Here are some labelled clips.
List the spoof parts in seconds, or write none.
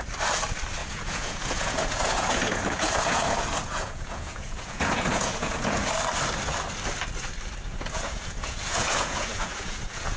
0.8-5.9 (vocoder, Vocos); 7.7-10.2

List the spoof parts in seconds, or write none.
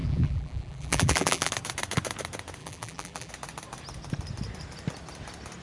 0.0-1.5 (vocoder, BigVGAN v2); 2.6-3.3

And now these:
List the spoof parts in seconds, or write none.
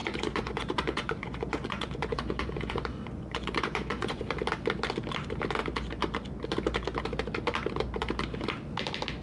0.0-4.2 (vocoder, Vocos)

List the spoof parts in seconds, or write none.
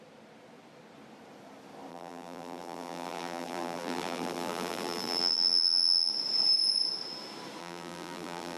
1.9-6.1 (vocoder, BigVGAN v2); 7.6-8.6